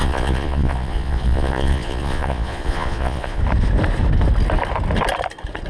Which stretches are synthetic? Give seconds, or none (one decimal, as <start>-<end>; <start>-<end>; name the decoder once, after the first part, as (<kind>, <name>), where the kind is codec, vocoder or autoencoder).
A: 0.0-3.4 (vocoder, Vocos)